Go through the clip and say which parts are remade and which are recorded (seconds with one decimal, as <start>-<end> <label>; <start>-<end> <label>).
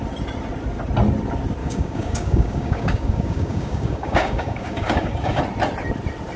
0.0-1.6 recorded; 1.6-5.4 remade; 5.4-6.4 recorded